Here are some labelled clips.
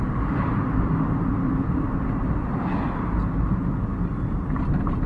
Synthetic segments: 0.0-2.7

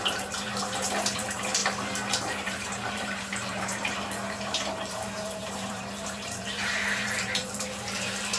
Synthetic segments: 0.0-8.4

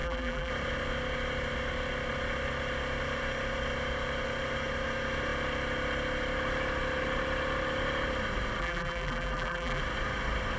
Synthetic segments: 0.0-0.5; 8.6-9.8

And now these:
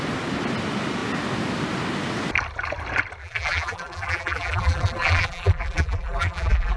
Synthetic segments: 3.2-6.8

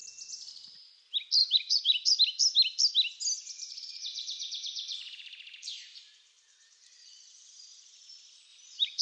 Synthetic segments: 1.4-2.2; 3.7-7.8; 8.5-9.0